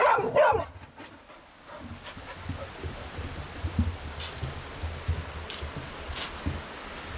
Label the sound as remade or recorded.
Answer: recorded